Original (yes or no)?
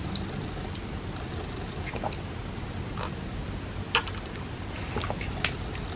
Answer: yes